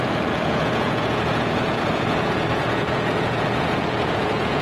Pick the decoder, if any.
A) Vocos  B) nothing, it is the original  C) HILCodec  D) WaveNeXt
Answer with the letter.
A